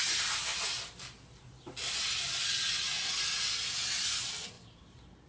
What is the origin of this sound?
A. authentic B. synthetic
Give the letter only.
A